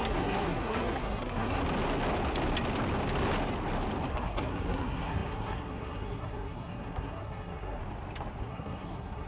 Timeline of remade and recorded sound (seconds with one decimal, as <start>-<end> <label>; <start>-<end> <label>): 0.0-1.6 remade; 1.6-4.1 recorded; 4.1-7.8 remade; 7.8-8.4 recorded; 8.4-9.3 remade